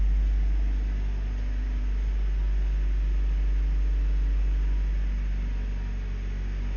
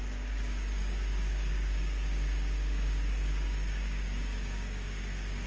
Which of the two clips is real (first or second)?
first